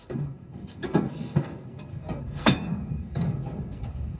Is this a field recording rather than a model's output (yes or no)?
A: no